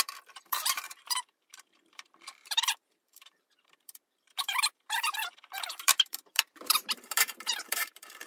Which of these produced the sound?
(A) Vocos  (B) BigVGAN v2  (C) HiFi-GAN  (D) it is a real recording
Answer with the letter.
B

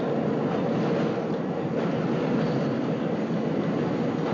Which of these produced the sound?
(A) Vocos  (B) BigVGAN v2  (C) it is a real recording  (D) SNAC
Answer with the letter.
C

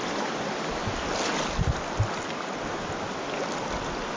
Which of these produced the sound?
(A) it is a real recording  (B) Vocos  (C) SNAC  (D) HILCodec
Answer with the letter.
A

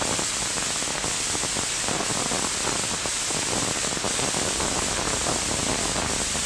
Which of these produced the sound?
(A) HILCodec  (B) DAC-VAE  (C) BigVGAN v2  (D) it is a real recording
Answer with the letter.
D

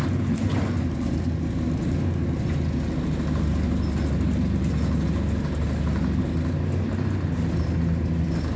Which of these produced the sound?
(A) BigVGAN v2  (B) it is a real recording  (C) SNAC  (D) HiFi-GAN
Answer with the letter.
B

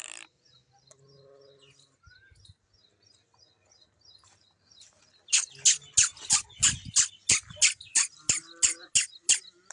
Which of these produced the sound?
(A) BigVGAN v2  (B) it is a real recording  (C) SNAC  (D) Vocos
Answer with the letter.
B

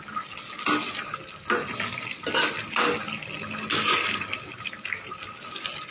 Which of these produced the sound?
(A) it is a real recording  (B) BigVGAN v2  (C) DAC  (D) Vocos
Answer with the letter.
A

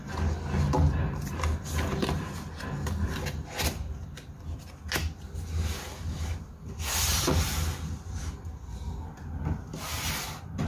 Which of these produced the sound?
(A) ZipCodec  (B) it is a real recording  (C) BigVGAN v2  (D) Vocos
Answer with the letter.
B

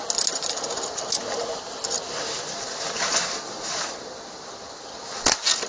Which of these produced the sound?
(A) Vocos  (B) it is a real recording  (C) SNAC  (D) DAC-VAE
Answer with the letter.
B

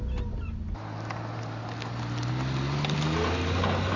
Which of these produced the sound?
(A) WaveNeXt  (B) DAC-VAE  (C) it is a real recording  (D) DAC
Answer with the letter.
C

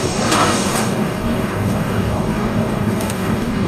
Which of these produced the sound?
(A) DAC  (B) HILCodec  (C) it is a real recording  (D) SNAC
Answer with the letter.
A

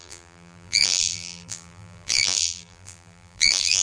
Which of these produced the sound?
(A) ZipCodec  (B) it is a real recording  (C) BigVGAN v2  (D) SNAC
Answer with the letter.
C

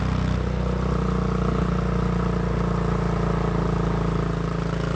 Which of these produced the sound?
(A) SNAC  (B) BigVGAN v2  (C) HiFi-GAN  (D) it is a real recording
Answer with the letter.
D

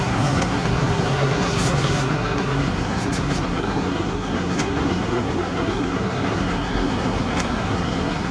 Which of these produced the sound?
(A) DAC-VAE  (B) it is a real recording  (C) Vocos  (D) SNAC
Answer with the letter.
D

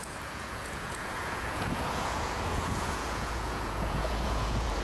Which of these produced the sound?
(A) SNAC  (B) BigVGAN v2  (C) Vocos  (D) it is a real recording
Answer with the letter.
C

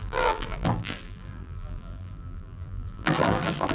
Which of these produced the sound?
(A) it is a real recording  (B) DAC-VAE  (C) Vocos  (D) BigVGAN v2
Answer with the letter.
D